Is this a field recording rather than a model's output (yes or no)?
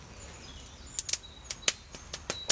yes